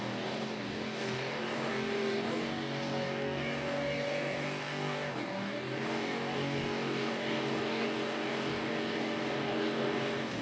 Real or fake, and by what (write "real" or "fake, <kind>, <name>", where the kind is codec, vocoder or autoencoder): fake, codec, DAC